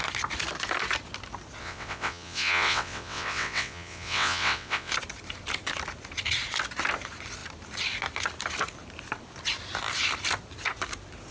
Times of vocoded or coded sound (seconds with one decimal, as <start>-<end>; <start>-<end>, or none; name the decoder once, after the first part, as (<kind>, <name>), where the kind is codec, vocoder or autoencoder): 1.6-4.9 (vocoder, WaveNeXt)